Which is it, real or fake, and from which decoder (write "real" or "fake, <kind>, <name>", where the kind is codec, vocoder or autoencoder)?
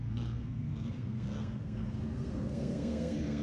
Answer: fake, codec, SNAC